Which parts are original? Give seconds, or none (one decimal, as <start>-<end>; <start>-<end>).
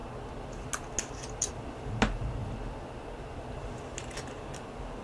0.0-5.0